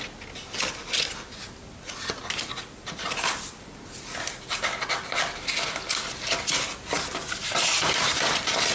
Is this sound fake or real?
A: real